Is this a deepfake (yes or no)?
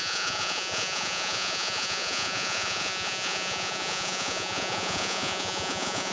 yes